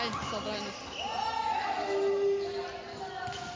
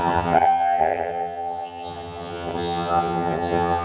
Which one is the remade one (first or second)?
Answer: second